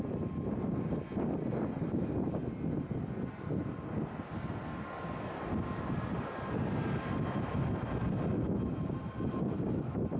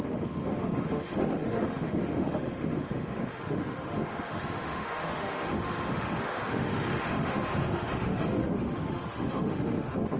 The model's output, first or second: second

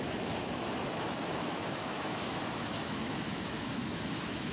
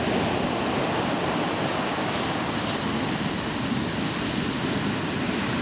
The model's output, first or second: first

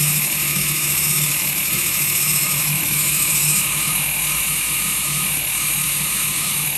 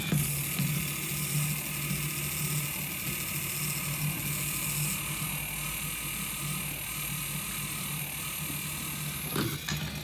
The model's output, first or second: first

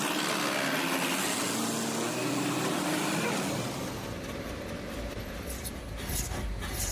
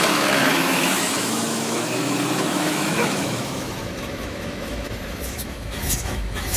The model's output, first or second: second